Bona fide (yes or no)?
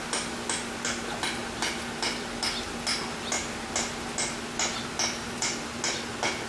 yes